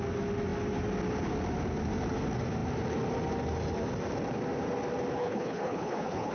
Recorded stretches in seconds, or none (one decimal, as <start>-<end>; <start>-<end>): 0.0-5.2